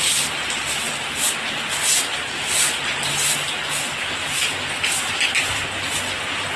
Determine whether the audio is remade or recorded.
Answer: recorded